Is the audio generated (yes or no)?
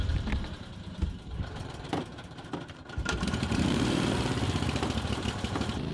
yes